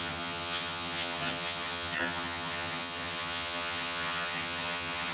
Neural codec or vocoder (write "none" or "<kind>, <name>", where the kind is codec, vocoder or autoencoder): vocoder, HiFi-GAN